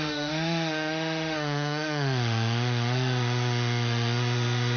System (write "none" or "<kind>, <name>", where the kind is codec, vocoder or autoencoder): autoencoder, DAC-VAE